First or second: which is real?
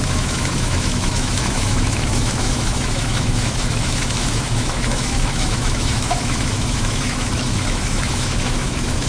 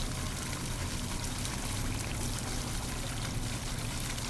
second